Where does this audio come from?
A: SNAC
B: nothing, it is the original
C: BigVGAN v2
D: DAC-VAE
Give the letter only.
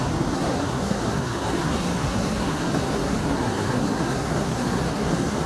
A